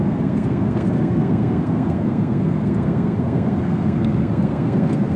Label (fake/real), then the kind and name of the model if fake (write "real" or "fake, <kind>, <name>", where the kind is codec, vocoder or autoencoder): fake, codec, SNAC